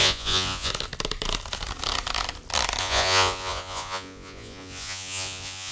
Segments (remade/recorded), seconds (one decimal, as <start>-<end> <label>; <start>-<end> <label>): 0.0-0.7 remade; 0.7-2.8 recorded; 2.8-5.7 remade